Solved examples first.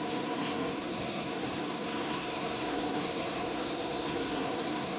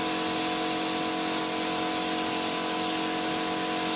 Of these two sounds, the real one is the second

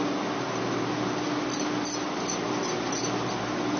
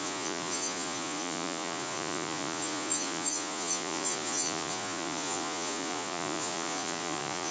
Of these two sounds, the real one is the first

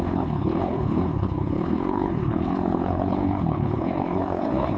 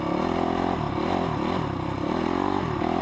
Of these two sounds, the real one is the second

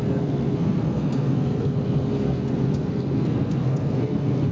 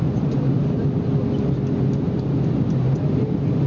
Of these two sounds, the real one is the second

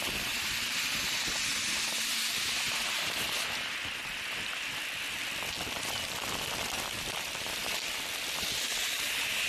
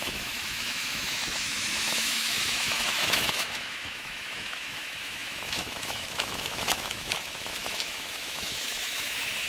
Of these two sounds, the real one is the first